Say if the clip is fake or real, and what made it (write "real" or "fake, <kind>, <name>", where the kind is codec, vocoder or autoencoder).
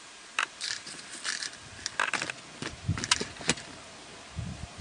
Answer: real